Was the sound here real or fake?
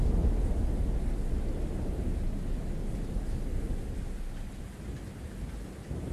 real